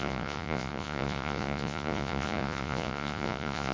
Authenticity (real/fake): fake